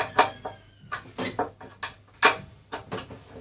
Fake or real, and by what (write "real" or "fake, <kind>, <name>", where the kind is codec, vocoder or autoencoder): real